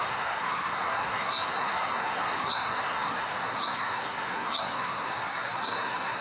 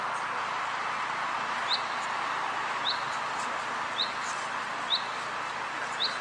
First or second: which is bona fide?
second